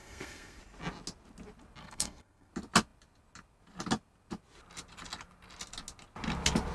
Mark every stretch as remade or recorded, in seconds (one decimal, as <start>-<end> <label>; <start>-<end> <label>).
0.0-0.6 remade; 0.6-1.8 recorded; 1.8-2.5 remade; 2.5-6.7 recorded